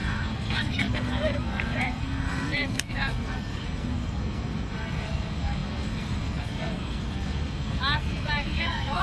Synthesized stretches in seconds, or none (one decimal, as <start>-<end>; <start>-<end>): 0.0-9.0